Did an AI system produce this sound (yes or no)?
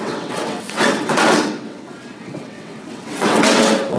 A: yes